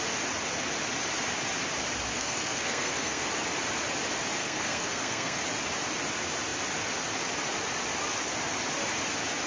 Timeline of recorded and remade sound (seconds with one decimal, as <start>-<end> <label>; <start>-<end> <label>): 0.0-2.1 recorded; 2.1-3.2 remade; 3.2-4.4 recorded; 4.4-5.4 remade; 5.4-9.5 recorded

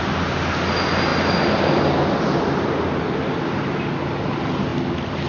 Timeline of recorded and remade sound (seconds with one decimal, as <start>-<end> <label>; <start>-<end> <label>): 0.0-5.3 recorded

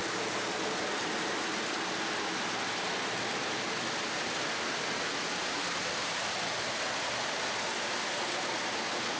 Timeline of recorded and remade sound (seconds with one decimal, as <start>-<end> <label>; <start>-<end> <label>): 0.0-9.2 recorded

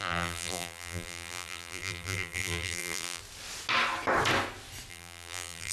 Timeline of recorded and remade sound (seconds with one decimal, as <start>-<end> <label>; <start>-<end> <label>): 0.0-3.2 remade; 3.2-4.9 recorded; 4.9-5.7 remade

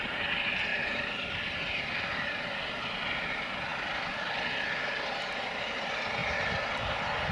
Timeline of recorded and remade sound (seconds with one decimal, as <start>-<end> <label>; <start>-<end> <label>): 0.0-0.7 recorded; 0.7-1.8 remade; 1.8-6.2 recorded; 6.2-7.3 remade

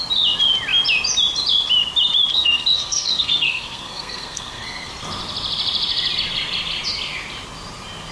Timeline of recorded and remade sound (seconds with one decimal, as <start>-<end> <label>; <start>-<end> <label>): 0.0-2.3 recorded; 2.3-4.9 remade; 4.9-8.1 recorded